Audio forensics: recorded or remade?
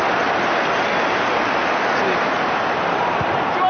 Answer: recorded